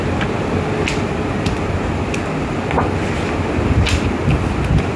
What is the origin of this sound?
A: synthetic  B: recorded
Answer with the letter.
B